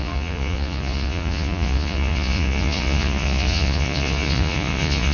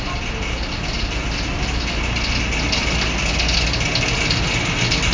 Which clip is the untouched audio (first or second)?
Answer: second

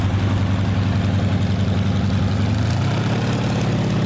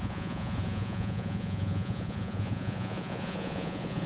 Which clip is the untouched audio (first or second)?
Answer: first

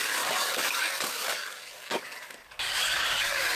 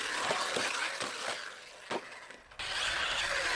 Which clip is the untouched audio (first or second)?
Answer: second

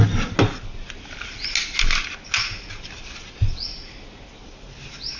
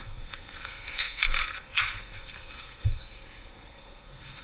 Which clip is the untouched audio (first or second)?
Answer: first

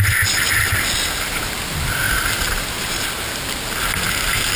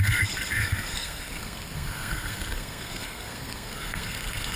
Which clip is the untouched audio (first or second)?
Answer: first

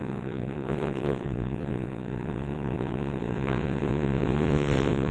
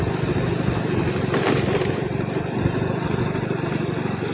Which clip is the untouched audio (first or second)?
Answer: second